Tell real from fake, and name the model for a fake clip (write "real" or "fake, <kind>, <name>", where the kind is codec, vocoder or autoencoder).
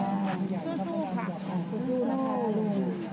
real